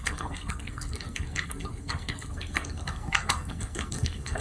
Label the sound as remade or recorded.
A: remade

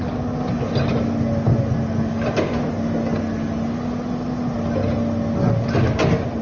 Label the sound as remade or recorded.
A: recorded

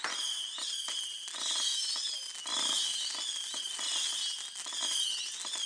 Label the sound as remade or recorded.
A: recorded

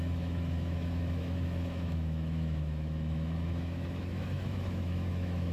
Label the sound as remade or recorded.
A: remade